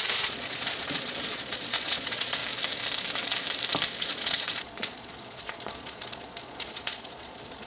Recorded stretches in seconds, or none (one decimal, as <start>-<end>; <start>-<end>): 2.4-4.0